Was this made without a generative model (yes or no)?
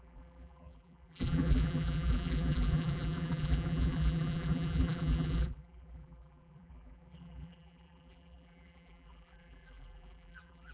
no